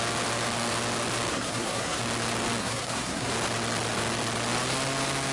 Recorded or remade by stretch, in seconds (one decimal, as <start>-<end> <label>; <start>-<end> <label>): 0.0-1.3 recorded; 1.3-2.0 remade; 2.0-2.6 recorded; 2.6-3.3 remade; 3.3-5.3 recorded